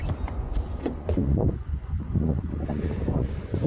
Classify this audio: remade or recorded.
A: remade